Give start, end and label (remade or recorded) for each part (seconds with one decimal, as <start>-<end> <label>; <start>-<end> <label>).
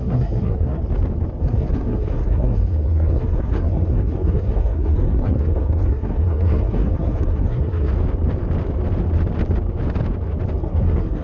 0.0-0.8 remade; 0.8-1.4 recorded; 1.4-7.9 remade; 7.9-10.6 recorded; 10.6-11.2 remade